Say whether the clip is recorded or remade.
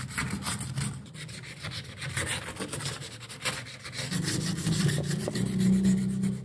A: recorded